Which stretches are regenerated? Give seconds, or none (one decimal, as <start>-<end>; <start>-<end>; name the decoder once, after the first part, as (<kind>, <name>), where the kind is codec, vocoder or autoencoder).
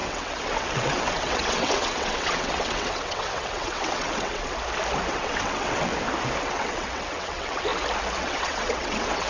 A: 0.0-4.5 (vocoder, WaveNeXt); 5.1-5.9; 6.4-7.7; 8.2-9.3